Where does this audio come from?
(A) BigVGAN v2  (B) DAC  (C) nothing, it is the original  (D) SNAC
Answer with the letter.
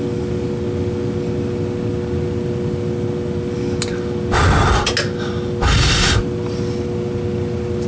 C